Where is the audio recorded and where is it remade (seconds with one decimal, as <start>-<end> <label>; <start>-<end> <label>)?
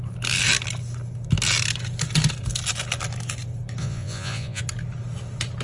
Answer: 0.0-3.8 recorded; 3.8-4.6 remade; 4.6-5.6 recorded